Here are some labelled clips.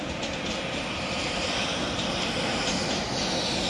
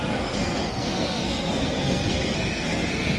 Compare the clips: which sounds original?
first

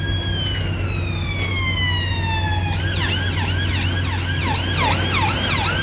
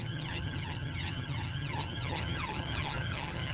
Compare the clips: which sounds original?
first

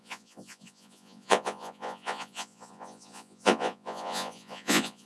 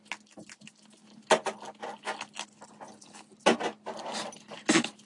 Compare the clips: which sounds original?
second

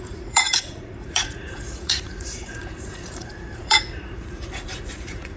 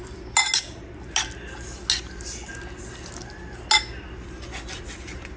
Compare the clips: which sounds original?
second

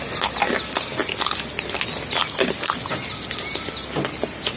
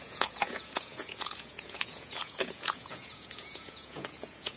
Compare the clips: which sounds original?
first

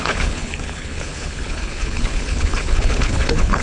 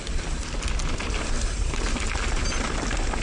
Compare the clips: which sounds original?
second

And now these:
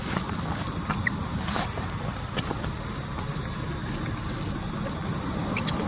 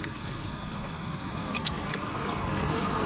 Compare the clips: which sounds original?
first